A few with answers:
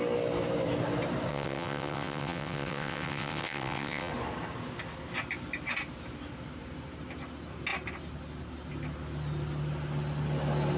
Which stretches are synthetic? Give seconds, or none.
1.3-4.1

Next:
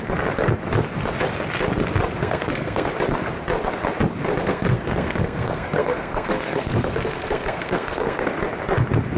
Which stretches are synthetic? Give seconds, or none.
2.2-2.9; 4.4-8.3

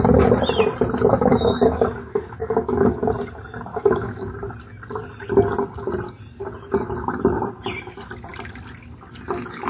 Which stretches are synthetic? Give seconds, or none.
1.3-3.0; 3.7-4.3

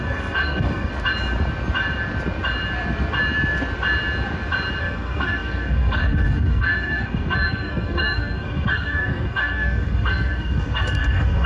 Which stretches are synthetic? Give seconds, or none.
0.0-0.9; 4.8-11.5

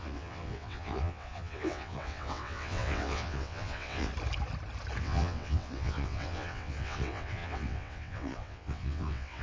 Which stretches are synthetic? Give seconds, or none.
0.0-4.1; 5.0-9.4